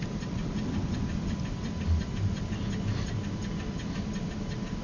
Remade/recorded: recorded